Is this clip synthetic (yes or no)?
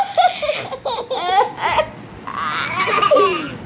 no